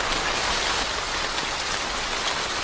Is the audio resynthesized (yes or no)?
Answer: no